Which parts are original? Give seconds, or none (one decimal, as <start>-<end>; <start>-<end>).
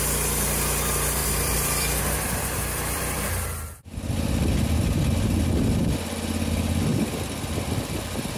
0.0-1.2; 4.1-8.4